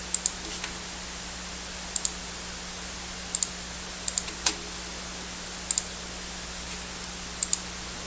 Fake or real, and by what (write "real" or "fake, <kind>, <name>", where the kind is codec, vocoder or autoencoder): real